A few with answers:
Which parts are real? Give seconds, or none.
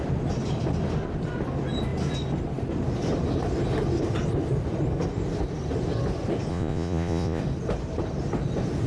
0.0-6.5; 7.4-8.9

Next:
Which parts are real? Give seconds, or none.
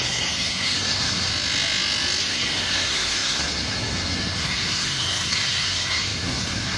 1.3-2.2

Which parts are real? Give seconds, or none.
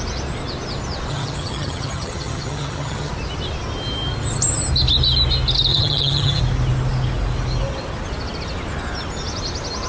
0.0-1.1; 3.1-5.7; 6.4-9.9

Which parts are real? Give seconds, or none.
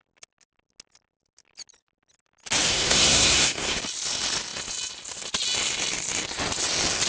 0.0-2.7; 3.8-7.1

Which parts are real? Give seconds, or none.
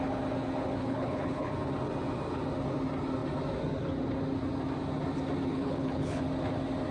0.0-0.8; 1.5-5.5; 6.2-6.9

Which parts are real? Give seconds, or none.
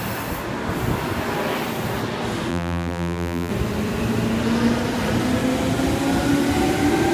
0.0-2.5; 3.5-7.1